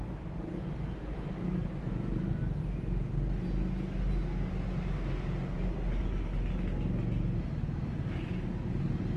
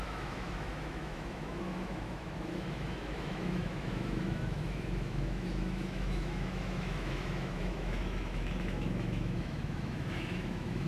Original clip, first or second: first